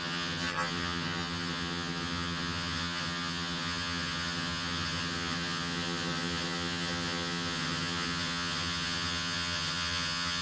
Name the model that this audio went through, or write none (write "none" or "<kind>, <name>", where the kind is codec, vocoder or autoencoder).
vocoder, HiFi-GAN